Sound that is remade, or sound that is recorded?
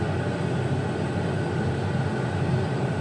recorded